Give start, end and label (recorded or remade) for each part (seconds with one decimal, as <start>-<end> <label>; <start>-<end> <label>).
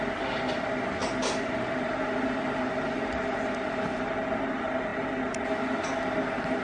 0.0-6.6 recorded